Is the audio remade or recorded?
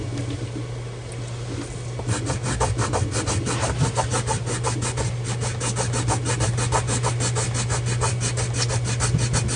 recorded